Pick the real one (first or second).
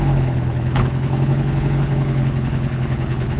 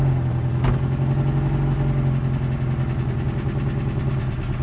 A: second